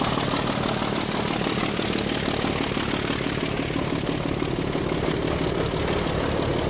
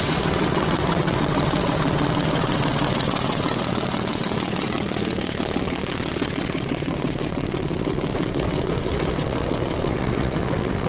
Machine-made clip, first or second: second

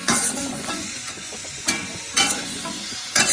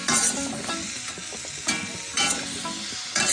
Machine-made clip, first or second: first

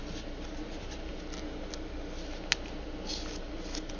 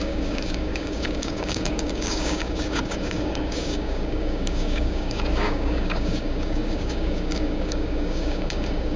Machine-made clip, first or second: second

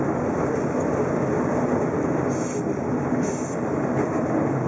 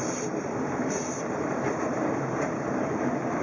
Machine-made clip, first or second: second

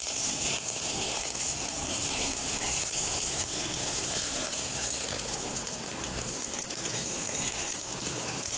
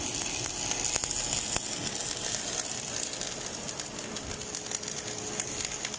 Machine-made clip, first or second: first